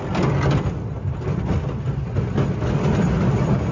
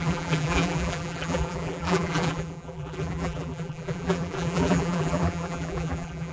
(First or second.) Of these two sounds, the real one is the first